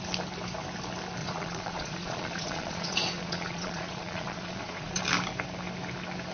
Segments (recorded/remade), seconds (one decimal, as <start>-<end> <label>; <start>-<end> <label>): 0.0-1.2 recorded; 1.2-5.0 remade; 5.0-6.3 recorded